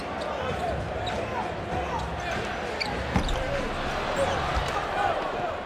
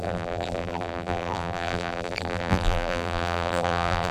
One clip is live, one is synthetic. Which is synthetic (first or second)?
second